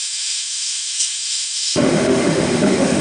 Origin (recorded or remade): remade